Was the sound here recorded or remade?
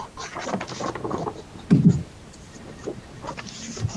recorded